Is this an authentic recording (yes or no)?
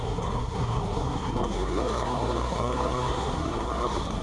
no